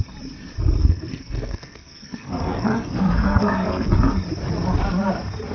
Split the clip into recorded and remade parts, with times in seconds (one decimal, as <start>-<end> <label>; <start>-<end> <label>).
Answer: 0.0-0.8 recorded; 0.8-3.9 remade; 3.9-5.5 recorded